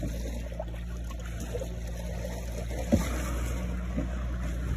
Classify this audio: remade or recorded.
recorded